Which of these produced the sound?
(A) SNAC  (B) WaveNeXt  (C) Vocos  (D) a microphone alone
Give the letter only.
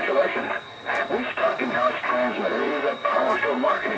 A